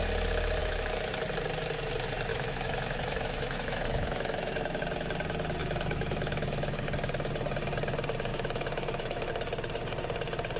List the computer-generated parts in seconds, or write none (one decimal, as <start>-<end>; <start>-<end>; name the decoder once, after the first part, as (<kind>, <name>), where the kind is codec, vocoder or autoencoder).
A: 0.6-1.1 (autoencoder, DAC-VAE); 2.3-4.8; 5.6-6.8; 8.3-9.3